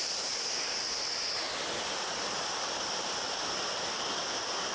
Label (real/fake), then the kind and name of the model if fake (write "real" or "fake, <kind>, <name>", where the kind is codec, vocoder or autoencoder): real